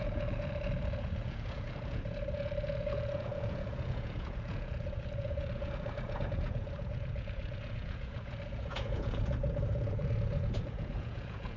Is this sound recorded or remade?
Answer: remade